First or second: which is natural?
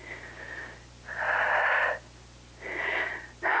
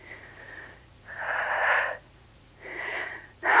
first